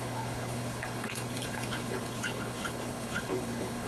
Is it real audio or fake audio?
fake